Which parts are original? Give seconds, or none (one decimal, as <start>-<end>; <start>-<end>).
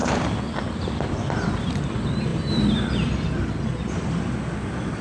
0.0-5.0